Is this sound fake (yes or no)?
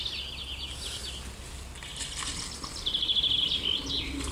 no